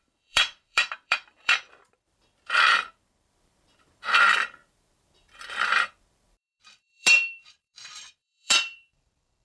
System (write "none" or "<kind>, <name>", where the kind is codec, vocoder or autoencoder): vocoder, BigVGAN v2